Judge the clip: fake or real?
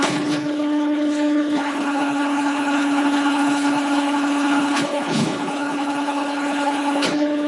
fake